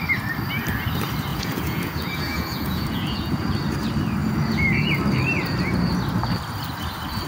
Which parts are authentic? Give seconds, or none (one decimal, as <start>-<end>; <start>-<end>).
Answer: 0.0-1.3; 3.5-4.2; 4.9-7.3

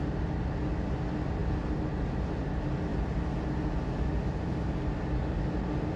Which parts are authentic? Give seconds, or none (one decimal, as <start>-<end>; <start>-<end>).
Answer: 0.0-6.0